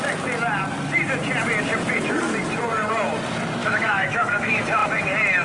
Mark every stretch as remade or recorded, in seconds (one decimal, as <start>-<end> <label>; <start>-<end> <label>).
0.0-3.6 recorded; 3.6-4.6 remade; 4.6-5.4 recorded